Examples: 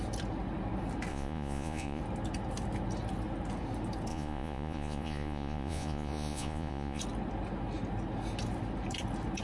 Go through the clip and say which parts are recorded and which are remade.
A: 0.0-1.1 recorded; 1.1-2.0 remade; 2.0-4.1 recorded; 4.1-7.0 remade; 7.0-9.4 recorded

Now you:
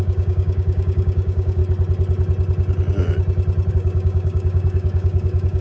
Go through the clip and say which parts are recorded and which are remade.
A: 0.0-1.6 remade; 1.6-3.7 recorded; 3.7-5.6 remade